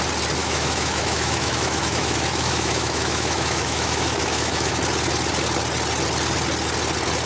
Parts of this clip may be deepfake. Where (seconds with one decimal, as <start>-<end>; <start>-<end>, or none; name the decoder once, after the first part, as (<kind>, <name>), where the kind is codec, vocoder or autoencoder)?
0.4-4.8 (autoencoder, DAC-VAE)